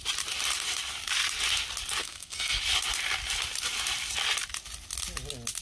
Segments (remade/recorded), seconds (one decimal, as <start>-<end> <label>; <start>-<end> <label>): 0.0-2.0 recorded; 2.0-2.6 remade; 2.6-5.6 recorded